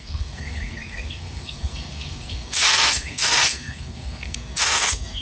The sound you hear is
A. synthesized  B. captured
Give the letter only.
A